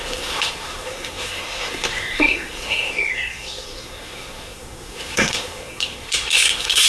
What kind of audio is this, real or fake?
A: fake